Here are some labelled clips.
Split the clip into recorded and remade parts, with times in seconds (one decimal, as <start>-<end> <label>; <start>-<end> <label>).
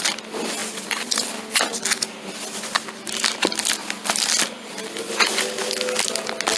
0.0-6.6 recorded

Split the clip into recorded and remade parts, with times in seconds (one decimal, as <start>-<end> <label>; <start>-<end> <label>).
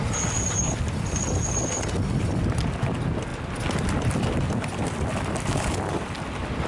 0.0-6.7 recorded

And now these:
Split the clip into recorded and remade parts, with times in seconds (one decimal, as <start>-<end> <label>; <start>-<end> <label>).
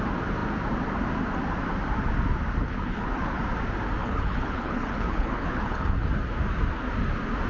0.0-2.6 recorded; 2.6-3.4 remade; 3.4-4.0 recorded; 4.0-6.1 remade; 6.1-7.5 recorded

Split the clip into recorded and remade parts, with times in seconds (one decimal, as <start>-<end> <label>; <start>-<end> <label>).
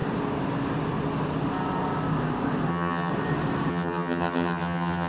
0.0-2.7 recorded; 2.7-3.1 remade; 3.1-3.7 recorded; 3.7-5.1 remade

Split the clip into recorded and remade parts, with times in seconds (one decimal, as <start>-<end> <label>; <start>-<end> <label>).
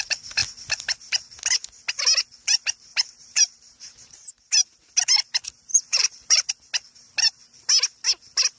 0.0-2.9 recorded; 2.9-4.5 remade; 4.5-5.7 recorded; 5.7-6.5 remade; 6.5-8.6 recorded